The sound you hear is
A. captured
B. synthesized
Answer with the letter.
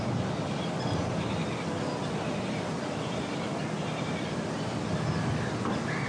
A